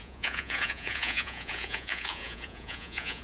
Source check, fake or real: fake